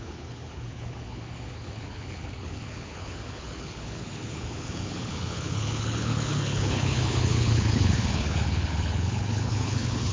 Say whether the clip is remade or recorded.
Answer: remade